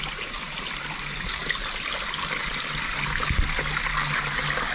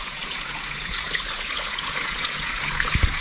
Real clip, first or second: first